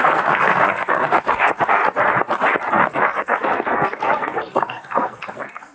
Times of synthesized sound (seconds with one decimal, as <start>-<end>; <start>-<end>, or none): 0.0-1.8; 2.7-5.7

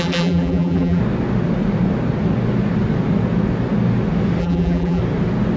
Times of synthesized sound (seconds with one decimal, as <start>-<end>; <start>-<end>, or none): 0.0-1.0; 4.4-5.0

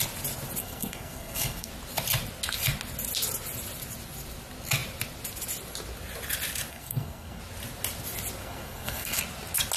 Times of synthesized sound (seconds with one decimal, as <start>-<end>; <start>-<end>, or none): 0.6-1.7; 6.7-7.4; 8.4-9.2

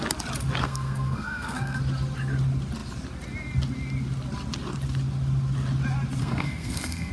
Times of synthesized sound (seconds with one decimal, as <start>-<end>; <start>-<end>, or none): 0.6-1.8; 6.2-7.1